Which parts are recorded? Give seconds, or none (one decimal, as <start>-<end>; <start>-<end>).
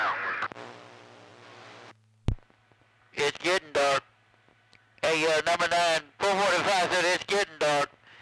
0.0-8.2